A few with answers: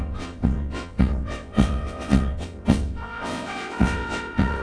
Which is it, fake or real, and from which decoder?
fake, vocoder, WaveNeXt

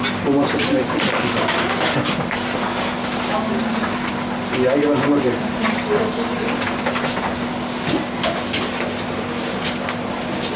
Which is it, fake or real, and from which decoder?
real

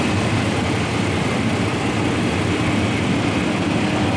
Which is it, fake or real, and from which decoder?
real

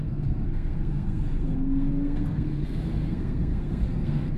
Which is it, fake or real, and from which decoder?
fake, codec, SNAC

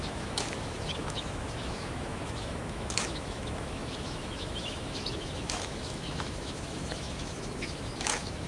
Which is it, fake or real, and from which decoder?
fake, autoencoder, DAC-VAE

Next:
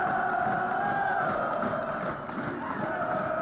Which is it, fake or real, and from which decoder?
real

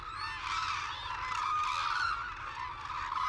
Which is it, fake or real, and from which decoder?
real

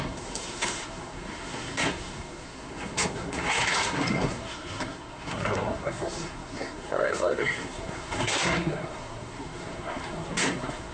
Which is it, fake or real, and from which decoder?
fake, codec, SNAC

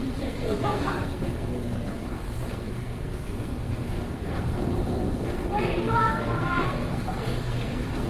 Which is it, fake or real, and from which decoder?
fake, codec, SNAC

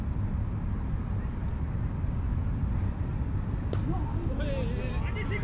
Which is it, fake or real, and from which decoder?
real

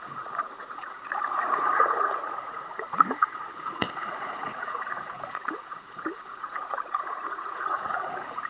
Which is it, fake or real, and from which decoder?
fake, vocoder, Vocos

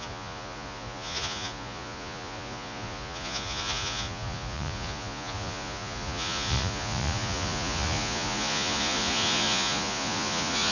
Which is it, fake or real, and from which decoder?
fake, vocoder, Vocos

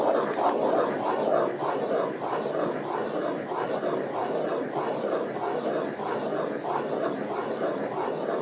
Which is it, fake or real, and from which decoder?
real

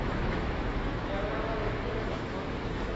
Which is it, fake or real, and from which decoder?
fake, autoencoder, DAC-VAE